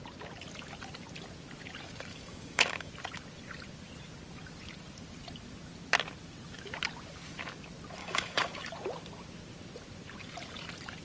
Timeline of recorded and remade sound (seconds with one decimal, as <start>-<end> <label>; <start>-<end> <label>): 0.0-2.1 recorded; 2.1-2.9 remade; 2.9-8.0 recorded; 8.0-8.6 remade; 8.6-11.0 recorded